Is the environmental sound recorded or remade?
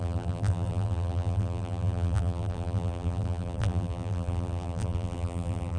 remade